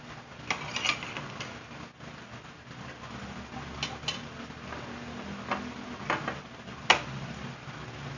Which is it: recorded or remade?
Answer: recorded